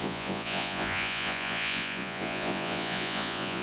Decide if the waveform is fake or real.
fake